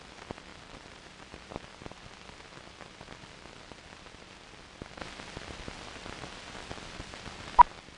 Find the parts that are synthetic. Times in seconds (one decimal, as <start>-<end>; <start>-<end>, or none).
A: 0.5-1.9; 5.0-7.6